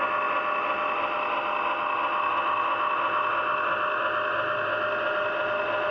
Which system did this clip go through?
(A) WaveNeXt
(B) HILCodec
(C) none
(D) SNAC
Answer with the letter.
C